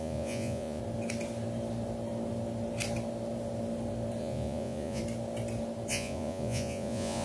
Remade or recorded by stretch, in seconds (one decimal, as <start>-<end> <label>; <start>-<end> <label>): 0.0-0.8 remade; 0.8-4.2 recorded; 4.2-5.0 remade; 5.0-5.9 recorded; 5.9-7.2 remade